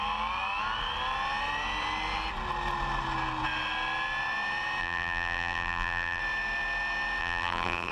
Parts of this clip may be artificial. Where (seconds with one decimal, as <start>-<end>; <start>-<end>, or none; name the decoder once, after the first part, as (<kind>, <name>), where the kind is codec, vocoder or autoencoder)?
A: 4.8-6.2 (vocoder, BigVGAN v2); 7.2-7.9